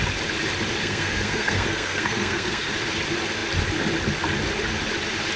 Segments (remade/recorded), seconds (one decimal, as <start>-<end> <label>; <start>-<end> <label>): 0.0-0.8 recorded; 0.8-2.7 remade; 2.7-5.4 recorded